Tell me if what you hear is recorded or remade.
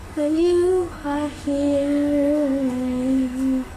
remade